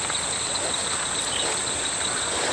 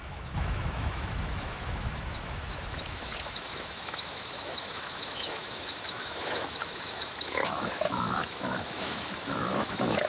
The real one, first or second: first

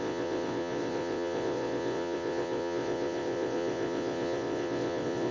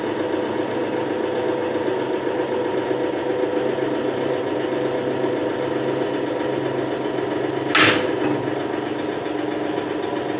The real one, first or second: second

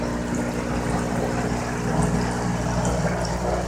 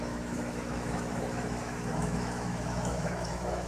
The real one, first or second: first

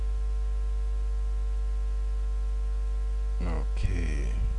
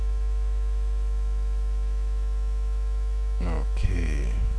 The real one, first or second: first